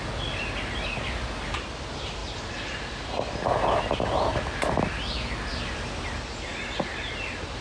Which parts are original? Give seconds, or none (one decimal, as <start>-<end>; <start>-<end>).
0.0-7.6